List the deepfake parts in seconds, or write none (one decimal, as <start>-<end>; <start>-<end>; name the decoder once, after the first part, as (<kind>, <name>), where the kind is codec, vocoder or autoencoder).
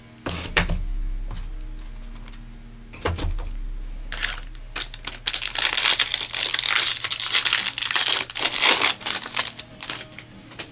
none